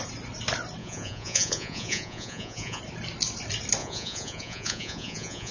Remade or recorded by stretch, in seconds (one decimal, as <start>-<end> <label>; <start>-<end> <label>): 0.0-0.8 recorded; 0.8-2.8 remade; 2.8-3.8 recorded; 3.8-5.5 remade